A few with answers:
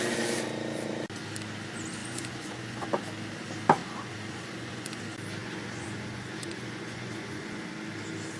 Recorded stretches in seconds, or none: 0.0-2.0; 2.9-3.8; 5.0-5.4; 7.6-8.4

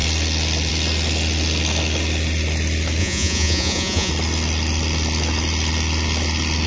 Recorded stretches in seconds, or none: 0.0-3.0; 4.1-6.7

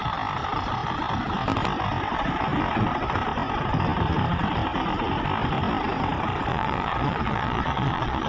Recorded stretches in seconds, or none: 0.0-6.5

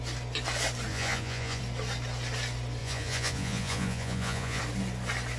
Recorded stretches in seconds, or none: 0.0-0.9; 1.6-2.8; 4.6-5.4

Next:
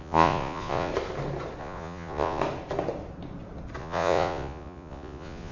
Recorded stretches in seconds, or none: 0.9-1.6; 2.4-3.8

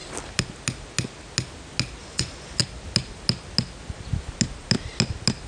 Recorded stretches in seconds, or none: 0.0-2.0; 2.6-5.5